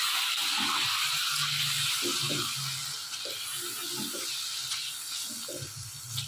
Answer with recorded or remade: recorded